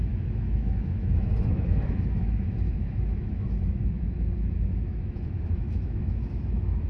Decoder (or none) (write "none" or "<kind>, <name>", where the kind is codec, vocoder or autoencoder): autoencoder, DAC-VAE